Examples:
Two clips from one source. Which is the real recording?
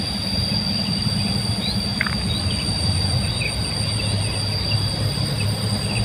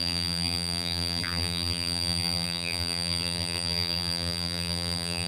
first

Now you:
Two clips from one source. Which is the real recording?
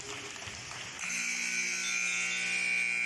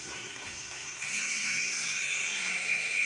first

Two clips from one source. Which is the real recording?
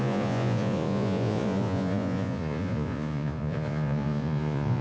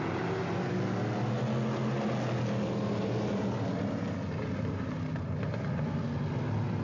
second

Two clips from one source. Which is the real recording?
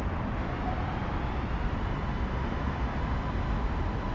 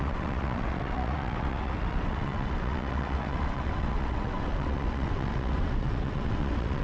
first